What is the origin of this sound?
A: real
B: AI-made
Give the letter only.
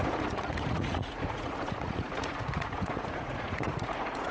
B